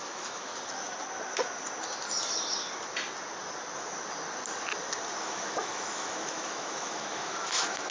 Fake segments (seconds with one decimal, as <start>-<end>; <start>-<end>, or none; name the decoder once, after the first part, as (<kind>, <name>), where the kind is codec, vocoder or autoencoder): 0.0-0.5 (autoencoder, DAC-VAE); 5.2-7.9